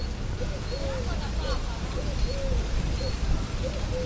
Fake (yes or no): no